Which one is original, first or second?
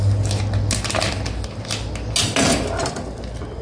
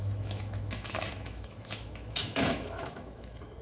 first